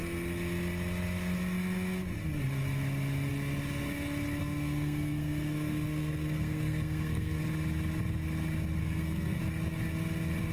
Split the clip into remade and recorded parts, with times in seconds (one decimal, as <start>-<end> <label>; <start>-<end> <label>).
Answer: 0.0-4.4 recorded; 4.4-7.4 remade; 7.4-8.8 recorded; 8.8-9.4 remade; 9.4-10.5 recorded